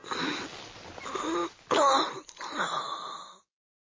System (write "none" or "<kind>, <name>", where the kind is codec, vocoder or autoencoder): none